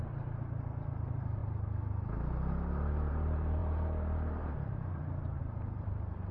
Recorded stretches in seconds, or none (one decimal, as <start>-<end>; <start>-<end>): 1.4-3.1

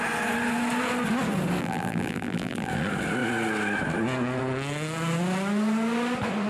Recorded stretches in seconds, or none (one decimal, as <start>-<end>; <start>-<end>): 0.0-1.6; 2.7-6.5

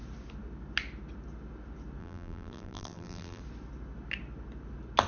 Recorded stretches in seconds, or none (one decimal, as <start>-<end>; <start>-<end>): 0.0-2.0; 3.4-5.1

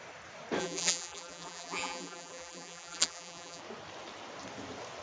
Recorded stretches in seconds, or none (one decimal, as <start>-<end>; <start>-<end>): 0.0-0.6; 3.6-5.0

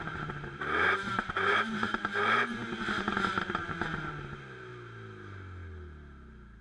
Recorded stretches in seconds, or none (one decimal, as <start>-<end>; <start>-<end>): 4.7-6.6

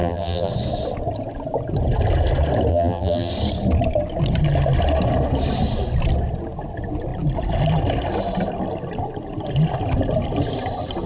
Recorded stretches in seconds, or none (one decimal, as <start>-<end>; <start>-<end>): 0.5-2.7; 3.3-11.1

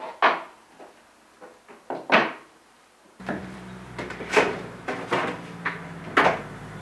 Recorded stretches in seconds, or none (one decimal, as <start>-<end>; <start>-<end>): 0.0-2.2; 4.9-6.8